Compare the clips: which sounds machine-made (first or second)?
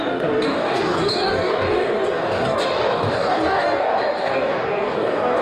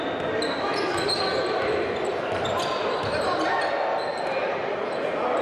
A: first